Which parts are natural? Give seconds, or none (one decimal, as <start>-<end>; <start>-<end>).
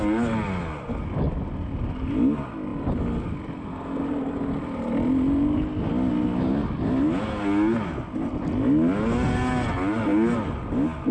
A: 0.0-11.1